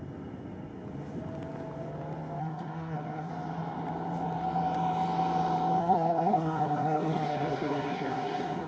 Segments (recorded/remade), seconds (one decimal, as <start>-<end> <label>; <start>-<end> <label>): 0.0-2.4 recorded; 2.4-3.3 remade; 3.3-5.8 recorded; 5.8-8.7 remade